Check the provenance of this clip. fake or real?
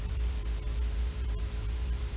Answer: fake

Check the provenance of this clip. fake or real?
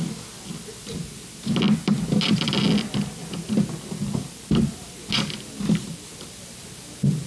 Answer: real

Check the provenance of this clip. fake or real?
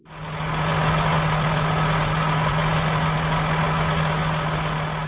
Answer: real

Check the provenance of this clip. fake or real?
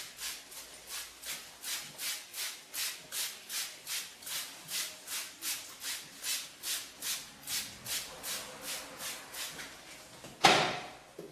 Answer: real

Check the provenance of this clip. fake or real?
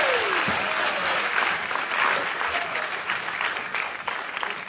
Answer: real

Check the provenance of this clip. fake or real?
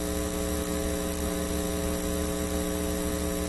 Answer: real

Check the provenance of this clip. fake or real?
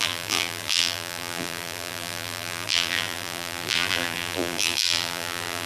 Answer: fake